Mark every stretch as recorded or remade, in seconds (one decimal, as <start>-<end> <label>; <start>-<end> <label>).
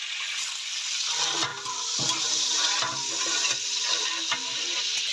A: 0.0-5.1 recorded